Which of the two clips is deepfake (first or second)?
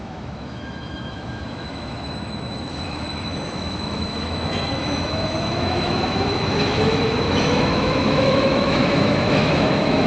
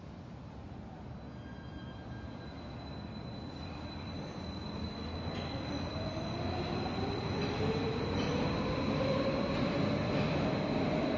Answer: first